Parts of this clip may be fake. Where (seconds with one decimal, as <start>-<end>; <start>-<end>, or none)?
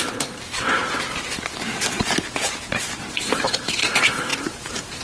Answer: 0.0-0.8; 3.1-5.0